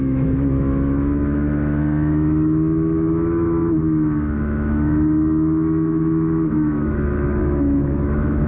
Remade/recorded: remade